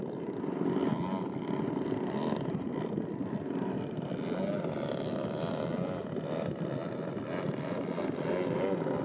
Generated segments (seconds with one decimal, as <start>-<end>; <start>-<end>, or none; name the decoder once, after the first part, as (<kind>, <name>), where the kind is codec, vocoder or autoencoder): none